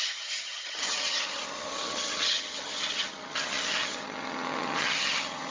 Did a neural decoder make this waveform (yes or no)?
yes